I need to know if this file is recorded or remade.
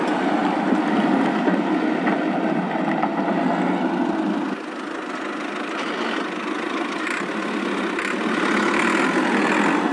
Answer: recorded